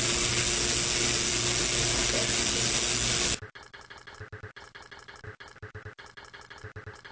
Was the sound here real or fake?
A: real